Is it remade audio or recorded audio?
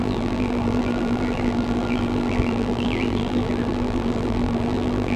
remade